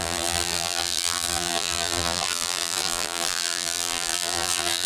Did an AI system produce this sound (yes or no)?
yes